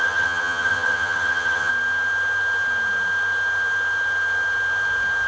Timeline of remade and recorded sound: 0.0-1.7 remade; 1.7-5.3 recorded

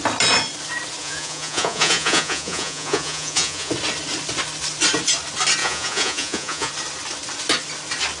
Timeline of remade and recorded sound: 0.0-1.0 recorded; 1.0-3.7 remade; 3.7-5.6 recorded; 5.6-6.7 remade; 6.7-8.2 recorded

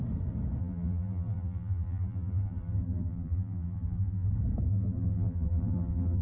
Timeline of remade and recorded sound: 0.0-0.6 recorded; 0.6-4.3 remade; 4.3-4.7 recorded; 4.7-6.2 remade

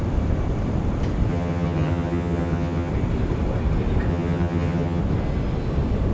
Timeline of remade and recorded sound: 0.0-1.3 recorded; 1.3-2.9 remade; 2.9-4.1 recorded; 4.1-5.0 remade; 5.0-6.1 recorded

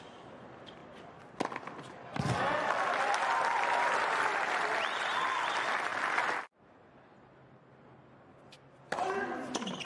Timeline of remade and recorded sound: 0.0-9.8 recorded

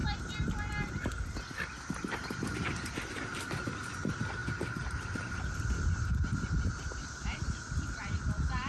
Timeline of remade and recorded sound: 0.0-8.7 recorded

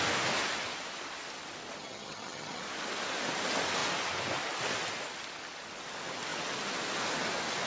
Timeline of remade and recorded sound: 0.0-1.8 recorded; 1.8-2.6 remade; 2.6-7.7 recorded